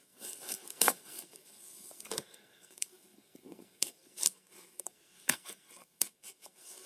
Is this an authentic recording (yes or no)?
no